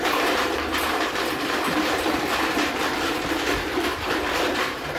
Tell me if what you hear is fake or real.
fake